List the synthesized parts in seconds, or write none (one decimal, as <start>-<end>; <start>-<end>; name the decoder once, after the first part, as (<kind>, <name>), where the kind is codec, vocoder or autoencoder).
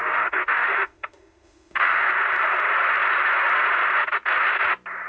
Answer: 0.0-2.1 (autoencoder, DAC-VAE)